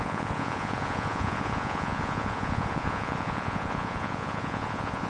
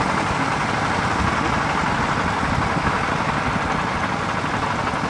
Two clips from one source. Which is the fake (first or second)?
first